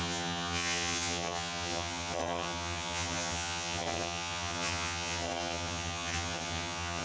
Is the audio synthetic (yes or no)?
yes